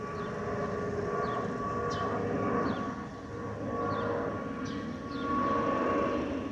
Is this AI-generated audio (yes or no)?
no